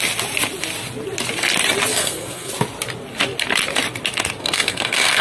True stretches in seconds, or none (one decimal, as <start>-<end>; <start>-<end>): 0.0-1.9; 2.5-4.4